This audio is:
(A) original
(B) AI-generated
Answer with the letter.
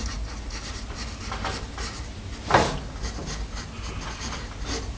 A